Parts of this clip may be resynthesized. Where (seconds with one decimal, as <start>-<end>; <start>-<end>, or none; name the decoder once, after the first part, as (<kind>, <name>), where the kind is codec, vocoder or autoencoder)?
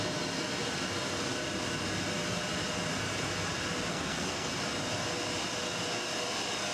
3.9-4.5 (codec, SNAC)